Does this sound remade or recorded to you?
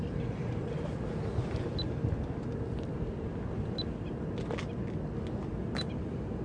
recorded